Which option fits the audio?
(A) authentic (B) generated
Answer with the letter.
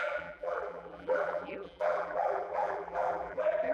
B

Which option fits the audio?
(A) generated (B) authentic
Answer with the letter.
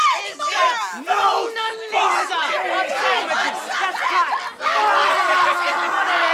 B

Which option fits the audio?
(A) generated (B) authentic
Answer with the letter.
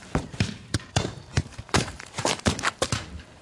A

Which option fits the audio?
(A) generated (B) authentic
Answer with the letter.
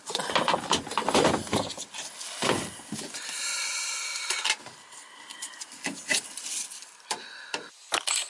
B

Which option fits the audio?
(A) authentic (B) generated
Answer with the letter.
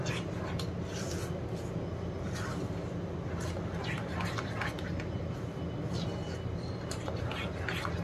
A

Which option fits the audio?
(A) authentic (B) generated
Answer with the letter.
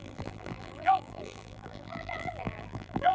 B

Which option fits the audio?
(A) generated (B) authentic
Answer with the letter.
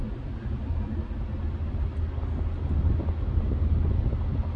B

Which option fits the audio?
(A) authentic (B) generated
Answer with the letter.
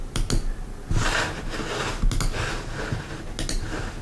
A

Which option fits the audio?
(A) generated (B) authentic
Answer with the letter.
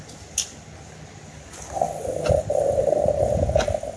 B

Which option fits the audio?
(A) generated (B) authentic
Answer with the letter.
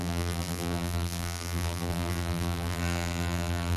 A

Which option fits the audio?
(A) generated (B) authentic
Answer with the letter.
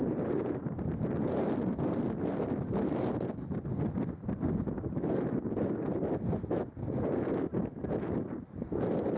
B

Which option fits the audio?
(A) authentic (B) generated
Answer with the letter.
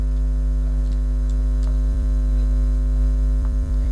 B